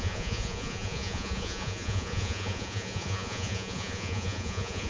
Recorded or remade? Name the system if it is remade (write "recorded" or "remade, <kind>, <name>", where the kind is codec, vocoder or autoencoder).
remade, vocoder, Vocos